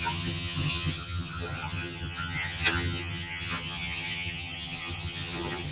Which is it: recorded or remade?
remade